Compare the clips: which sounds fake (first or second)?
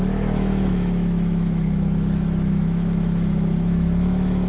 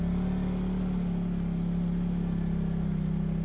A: first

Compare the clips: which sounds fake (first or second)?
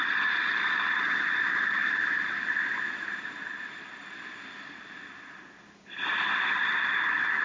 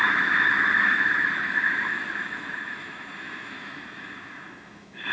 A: second